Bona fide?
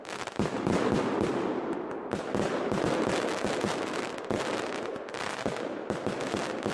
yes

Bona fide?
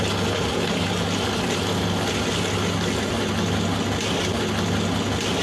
yes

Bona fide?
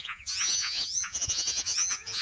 no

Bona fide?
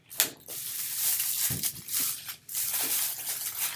yes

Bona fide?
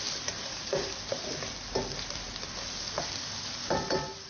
yes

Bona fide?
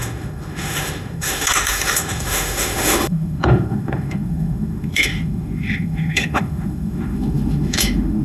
no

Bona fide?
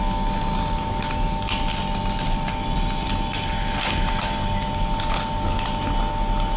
yes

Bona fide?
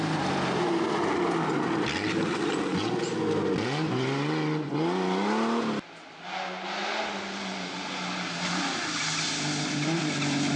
yes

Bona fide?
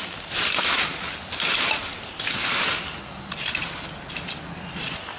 yes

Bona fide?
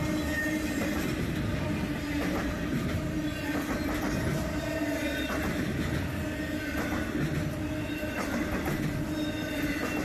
yes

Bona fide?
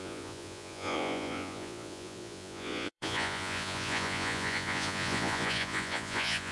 no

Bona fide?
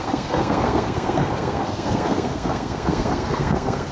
no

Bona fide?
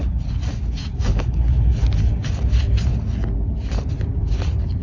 yes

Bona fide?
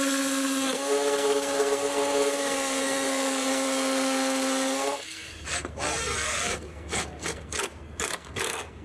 no